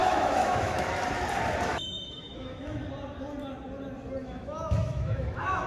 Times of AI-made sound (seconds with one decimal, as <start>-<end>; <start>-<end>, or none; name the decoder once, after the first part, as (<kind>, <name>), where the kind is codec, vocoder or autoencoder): 0.0-0.9 (autoencoder, DAC-VAE); 1.7-2.8; 4.2-5.7

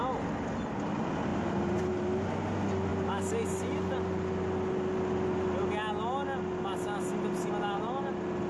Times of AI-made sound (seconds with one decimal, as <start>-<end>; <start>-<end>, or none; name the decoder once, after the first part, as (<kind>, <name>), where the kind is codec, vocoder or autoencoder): none

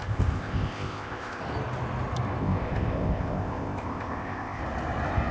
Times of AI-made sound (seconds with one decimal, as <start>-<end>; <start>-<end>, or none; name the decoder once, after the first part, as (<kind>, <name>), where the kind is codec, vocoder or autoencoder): 0.0-1.4 (codec, ZipCodec); 2.4-4.6

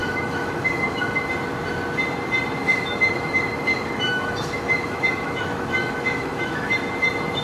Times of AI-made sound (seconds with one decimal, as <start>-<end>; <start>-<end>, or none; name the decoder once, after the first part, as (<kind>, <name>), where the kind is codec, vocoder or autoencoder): 0.0-1.3 (autoencoder, DAC-VAE); 2.6-6.9

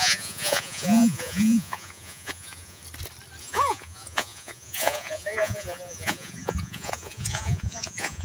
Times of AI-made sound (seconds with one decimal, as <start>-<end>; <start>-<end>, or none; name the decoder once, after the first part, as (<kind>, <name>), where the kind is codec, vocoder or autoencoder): 0.0-2.8 (vocoder, Vocos); 3.4-8.2